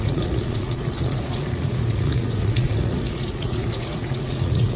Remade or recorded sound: remade